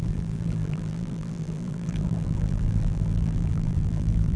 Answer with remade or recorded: remade